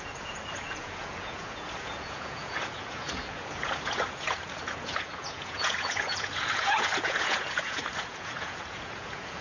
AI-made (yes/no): yes